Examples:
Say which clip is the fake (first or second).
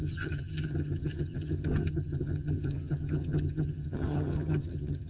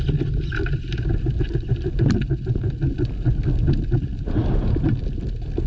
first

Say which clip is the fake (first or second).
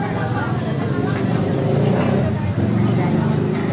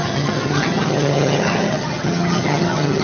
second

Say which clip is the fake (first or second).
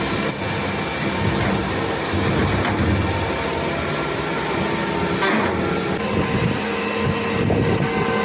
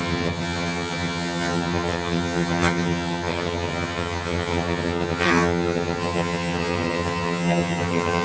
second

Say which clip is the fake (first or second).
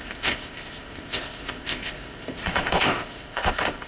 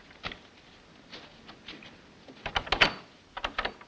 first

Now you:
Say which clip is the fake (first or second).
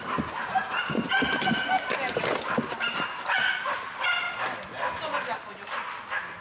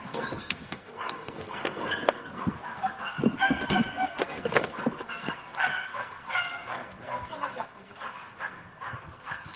second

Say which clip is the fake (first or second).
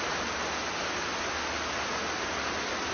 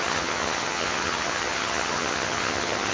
second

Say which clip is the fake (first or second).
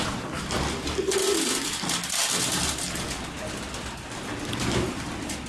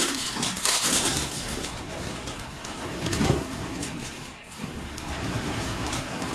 second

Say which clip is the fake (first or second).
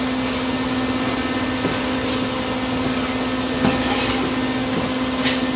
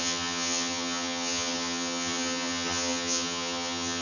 second